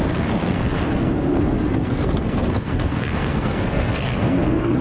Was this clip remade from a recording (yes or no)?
yes